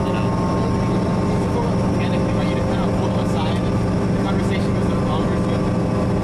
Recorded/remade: recorded